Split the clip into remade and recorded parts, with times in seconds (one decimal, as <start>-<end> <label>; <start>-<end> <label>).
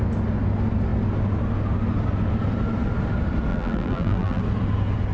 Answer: 0.0-3.5 recorded; 3.5-4.4 remade; 4.4-5.1 recorded